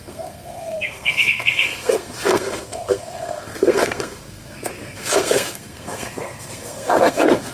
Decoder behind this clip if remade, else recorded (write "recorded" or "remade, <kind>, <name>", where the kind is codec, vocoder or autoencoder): remade, codec, SNAC